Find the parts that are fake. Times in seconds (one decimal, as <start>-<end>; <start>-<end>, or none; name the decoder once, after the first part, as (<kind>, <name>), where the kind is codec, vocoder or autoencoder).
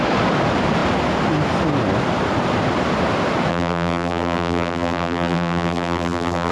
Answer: 3.5-6.5 (vocoder, BigVGAN v2)